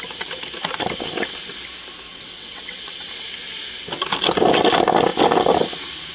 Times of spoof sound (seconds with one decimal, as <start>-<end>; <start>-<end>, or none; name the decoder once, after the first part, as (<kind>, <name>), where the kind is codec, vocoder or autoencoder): 2.1-3.1 (vocoder, WaveNeXt)